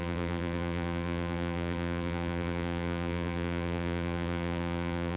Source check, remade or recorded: remade